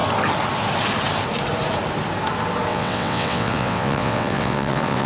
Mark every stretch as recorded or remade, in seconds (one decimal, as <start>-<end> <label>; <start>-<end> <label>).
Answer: 0.0-2.7 recorded; 2.7-5.1 remade